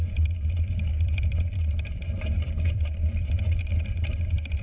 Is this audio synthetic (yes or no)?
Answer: yes